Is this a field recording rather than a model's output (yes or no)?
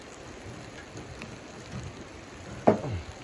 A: yes